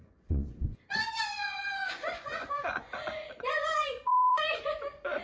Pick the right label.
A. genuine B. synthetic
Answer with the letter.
B